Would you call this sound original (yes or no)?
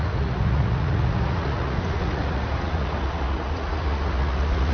no